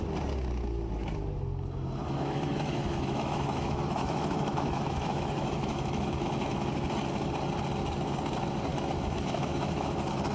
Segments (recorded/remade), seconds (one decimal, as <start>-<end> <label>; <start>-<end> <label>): 0.0-2.0 recorded; 2.0-6.7 remade; 6.7-8.7 recorded; 8.7-9.9 remade; 9.9-10.3 recorded